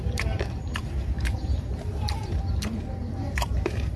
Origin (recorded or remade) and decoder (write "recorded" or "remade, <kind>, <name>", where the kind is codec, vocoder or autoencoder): remade, vocoder, BigVGAN v2